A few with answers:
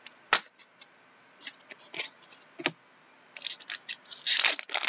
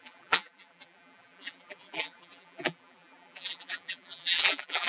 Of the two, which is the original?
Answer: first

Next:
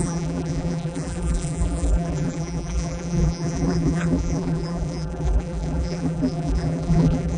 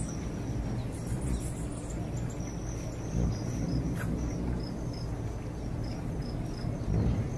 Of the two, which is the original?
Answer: second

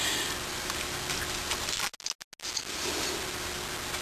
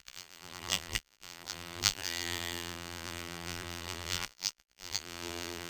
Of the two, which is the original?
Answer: first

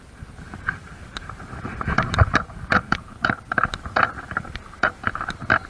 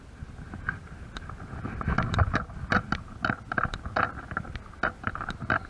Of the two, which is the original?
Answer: second